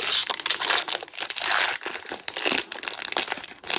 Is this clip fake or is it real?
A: real